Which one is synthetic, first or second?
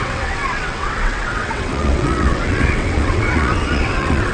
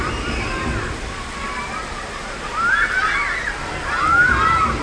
first